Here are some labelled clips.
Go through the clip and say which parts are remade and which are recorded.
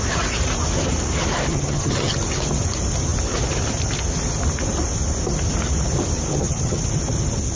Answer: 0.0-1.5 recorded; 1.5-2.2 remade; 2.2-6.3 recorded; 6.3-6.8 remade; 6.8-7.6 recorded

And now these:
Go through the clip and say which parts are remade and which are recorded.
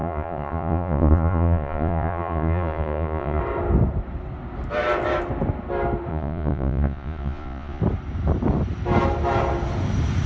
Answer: 0.0-3.4 remade; 3.4-6.1 recorded; 6.1-7.8 remade; 7.8-10.3 recorded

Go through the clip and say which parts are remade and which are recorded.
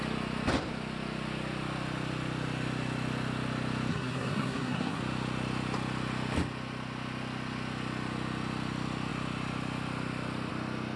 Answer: 0.0-3.9 recorded; 3.9-5.0 remade; 5.0-11.0 recorded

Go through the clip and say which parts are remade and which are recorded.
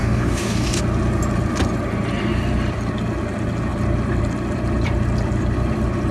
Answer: 0.0-0.8 remade; 0.8-6.1 recorded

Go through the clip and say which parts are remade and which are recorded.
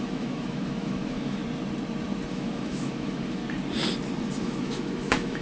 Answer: 0.0-1.4 remade; 1.4-2.3 recorded; 2.3-3.4 remade; 3.4-4.4 recorded; 4.4-5.4 remade